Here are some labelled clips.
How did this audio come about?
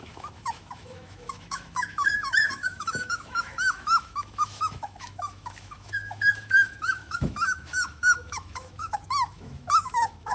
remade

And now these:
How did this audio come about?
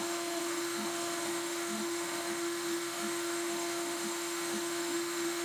remade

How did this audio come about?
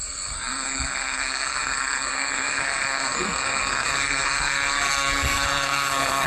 remade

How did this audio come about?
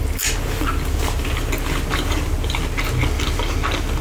recorded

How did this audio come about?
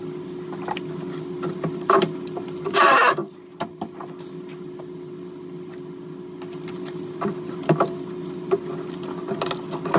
recorded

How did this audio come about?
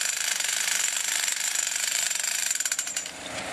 remade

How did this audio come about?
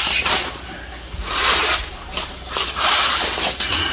remade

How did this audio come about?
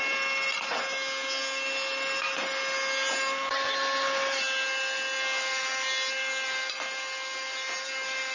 recorded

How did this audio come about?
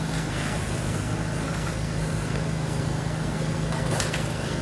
remade